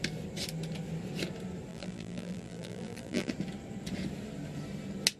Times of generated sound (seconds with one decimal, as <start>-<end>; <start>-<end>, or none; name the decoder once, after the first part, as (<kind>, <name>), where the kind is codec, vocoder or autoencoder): 1.7-3.3 (vocoder, BigVGAN v2)